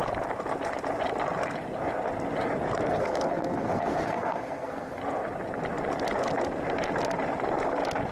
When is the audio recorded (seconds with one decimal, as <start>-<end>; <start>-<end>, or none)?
0.0-2.9; 5.0-8.1